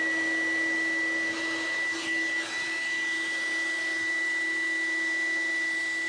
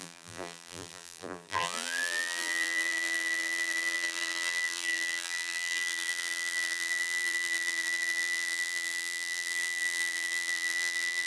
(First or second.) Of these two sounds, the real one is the first